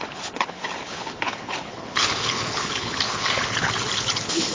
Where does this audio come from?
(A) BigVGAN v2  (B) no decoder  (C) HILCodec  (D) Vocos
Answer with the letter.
C